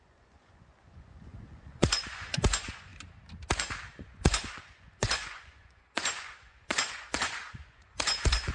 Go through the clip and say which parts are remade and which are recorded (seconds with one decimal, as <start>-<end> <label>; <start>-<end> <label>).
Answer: 0.0-2.9 remade; 2.9-3.9 recorded; 3.9-8.5 remade